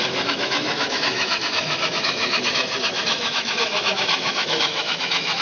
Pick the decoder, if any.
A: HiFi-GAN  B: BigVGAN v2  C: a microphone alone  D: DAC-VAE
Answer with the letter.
D